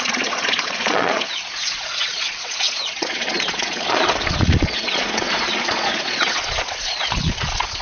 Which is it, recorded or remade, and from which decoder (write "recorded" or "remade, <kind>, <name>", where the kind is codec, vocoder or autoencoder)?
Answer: remade, vocoder, Vocos